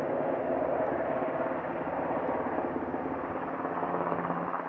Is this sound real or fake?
real